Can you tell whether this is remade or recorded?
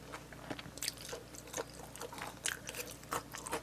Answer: recorded